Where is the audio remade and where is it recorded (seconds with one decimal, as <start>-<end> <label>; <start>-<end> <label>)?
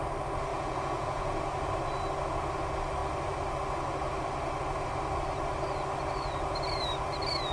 0.0-0.5 recorded; 0.5-1.4 remade; 1.4-7.5 recorded